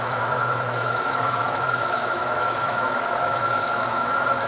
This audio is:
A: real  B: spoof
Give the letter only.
B